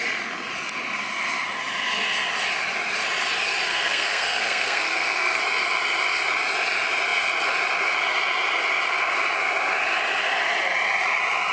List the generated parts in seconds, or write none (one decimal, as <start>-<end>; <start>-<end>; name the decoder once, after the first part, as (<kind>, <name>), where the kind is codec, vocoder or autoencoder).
3.7-5.4 (codec, SNAC)